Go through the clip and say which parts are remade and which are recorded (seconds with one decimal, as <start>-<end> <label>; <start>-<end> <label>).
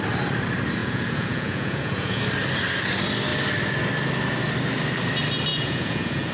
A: 0.0-0.8 recorded; 0.8-2.2 remade; 2.2-5.5 recorded; 5.5-6.3 remade